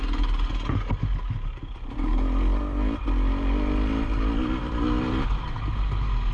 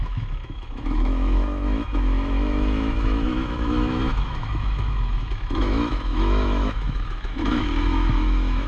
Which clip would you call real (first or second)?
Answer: first